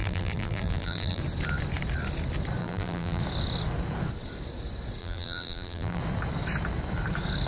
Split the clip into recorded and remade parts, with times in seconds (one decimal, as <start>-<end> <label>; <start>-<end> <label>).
0.0-1.2 remade; 1.2-2.6 recorded; 2.6-3.2 remade; 3.2-5.0 recorded; 5.0-6.0 remade; 6.0-7.5 recorded